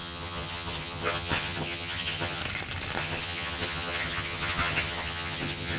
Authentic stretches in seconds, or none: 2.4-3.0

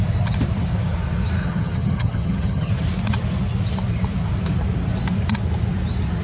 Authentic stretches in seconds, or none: 0.0-1.4; 2.7-6.2

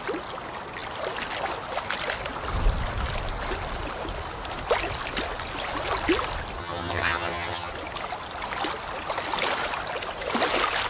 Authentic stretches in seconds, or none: 0.0-6.6; 7.7-10.9